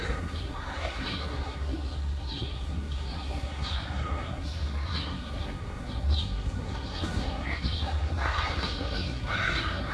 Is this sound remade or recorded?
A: remade